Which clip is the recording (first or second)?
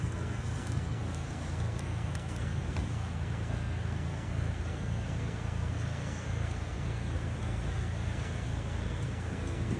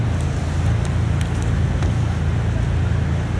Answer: second